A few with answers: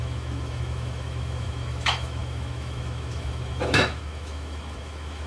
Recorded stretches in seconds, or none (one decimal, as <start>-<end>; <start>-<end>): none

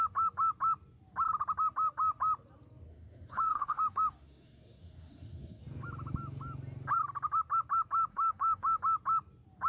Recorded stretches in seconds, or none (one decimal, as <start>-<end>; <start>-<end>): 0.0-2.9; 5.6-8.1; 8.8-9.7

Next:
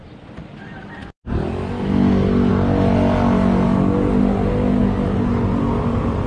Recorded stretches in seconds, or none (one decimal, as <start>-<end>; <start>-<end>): 0.0-6.3